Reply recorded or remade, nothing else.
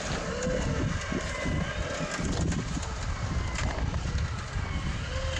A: recorded